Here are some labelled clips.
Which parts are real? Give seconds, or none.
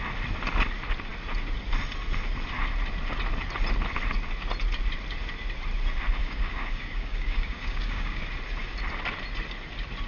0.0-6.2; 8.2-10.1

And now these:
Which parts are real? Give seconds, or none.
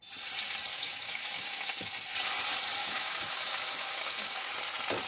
0.0-0.7; 1.9-2.8; 4.5-5.1